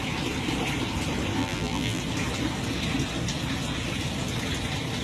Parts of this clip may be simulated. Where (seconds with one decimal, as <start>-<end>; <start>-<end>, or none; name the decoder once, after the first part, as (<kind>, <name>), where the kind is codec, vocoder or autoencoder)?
1.4-2.0 (vocoder, BigVGAN v2)